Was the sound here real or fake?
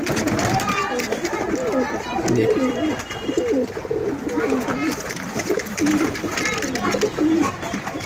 real